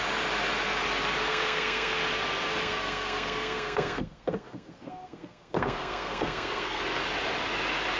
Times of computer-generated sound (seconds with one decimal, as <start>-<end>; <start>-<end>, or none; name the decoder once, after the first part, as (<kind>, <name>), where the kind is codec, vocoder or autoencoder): 1.3-2.0 (codec, SNAC); 2.6-6.8